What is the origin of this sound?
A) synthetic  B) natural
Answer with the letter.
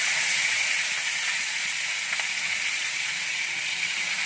A